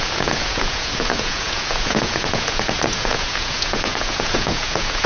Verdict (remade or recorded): remade